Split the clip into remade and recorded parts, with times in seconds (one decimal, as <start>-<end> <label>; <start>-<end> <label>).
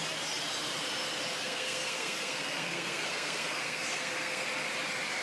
0.0-1.4 recorded; 1.4-4.5 remade; 4.5-5.2 recorded